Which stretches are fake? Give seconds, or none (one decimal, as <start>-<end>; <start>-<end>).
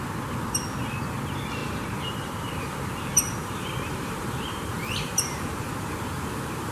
1.6-5.6